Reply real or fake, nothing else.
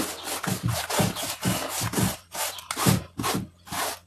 real